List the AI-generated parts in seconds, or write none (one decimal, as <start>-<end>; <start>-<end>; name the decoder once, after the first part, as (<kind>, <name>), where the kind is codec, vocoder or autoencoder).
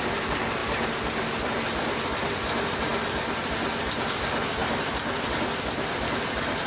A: none